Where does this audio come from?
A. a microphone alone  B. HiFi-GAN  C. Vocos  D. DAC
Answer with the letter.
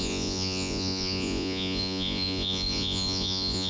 C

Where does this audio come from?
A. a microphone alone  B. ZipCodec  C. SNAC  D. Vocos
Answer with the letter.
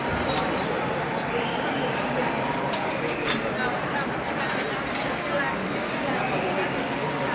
A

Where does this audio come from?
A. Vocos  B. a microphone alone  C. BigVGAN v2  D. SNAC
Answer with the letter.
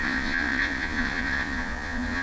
A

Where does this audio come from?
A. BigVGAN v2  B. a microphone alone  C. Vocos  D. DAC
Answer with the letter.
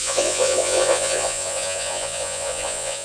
C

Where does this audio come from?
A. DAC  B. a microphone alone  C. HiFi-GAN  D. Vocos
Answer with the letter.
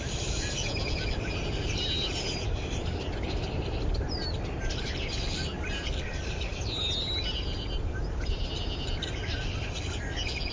B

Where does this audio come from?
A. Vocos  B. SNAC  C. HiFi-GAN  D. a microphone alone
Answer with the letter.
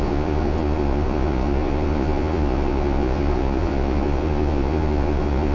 A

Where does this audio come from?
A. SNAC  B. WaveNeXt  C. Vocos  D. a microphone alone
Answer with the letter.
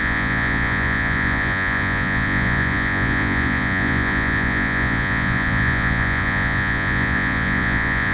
C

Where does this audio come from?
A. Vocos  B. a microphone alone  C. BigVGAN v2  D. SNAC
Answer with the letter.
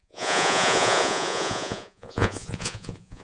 A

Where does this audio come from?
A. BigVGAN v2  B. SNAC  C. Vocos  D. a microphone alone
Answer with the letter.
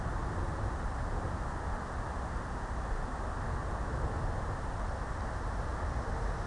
D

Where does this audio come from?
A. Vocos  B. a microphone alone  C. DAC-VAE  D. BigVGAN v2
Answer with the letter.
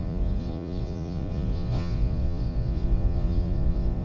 A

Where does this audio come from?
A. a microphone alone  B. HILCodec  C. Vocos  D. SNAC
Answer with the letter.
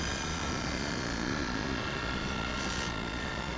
C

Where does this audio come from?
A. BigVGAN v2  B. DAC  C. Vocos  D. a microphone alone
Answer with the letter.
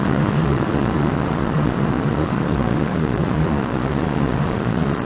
C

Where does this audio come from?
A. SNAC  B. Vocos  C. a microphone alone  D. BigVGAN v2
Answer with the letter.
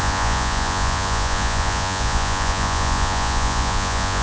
B